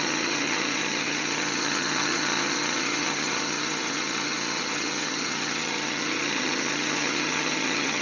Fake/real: fake